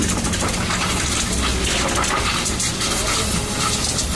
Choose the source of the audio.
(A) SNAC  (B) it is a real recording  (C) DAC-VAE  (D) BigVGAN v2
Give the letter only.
B